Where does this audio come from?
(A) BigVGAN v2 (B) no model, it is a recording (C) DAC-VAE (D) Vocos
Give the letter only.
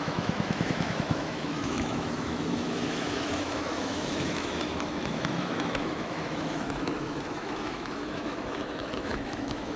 C